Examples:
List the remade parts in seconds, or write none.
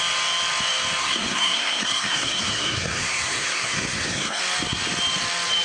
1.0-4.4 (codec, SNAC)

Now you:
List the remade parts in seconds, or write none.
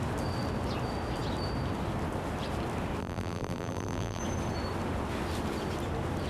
3.0-4.2 (vocoder, BigVGAN v2)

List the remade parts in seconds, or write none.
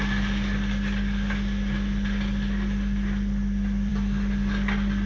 none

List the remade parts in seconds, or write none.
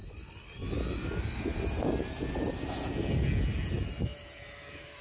none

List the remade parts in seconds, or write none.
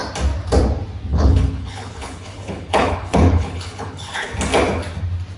1.1-4.3 (codec, HILCodec)